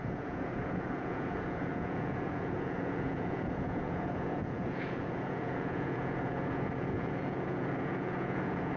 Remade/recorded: remade